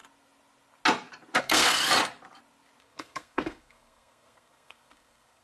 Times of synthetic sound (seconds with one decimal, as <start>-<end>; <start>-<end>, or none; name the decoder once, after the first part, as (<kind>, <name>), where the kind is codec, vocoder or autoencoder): 1.4-1.8 (codec, SNAC); 2.8-5.4